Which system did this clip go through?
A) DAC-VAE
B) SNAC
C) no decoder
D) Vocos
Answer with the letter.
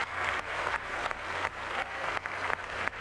B